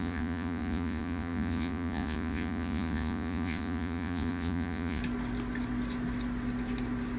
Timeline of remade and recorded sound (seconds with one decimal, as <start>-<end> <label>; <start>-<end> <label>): 0.0-5.0 remade; 5.0-7.2 recorded